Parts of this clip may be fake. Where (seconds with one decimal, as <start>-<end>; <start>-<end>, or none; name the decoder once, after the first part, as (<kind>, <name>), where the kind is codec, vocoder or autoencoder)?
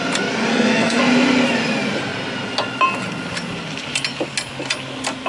0.5-1.0 (codec, SNAC)